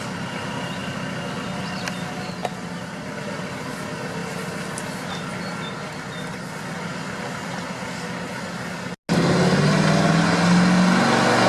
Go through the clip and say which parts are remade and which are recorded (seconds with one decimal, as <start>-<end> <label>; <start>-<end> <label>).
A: 0.0-2.4 recorded; 2.4-3.5 remade; 3.5-11.5 recorded